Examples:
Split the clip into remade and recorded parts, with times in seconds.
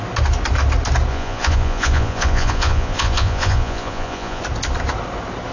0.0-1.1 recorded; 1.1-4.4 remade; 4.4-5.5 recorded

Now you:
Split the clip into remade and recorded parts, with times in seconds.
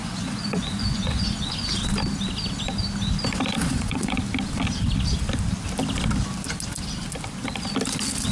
0.0-1.7 remade; 1.7-3.6 recorded; 3.6-4.2 remade; 4.2-8.3 recorded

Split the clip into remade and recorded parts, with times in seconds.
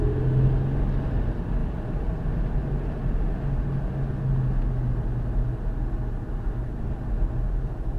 0.0-8.0 recorded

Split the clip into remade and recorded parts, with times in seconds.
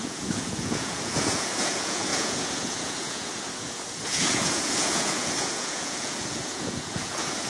0.0-7.5 remade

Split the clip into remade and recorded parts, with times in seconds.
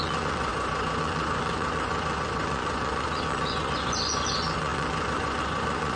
0.0-0.5 remade; 0.5-1.0 recorded; 1.0-6.0 remade